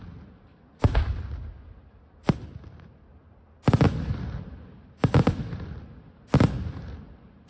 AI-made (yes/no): no